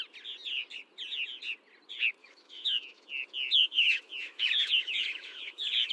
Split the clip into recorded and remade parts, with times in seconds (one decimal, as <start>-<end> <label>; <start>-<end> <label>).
0.0-2.2 recorded; 2.2-3.1 remade; 3.1-3.6 recorded; 3.6-5.9 remade